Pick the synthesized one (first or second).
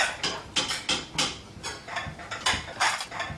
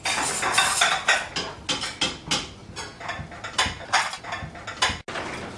first